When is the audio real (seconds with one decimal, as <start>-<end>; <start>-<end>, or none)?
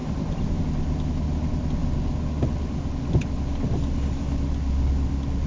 0.6-5.5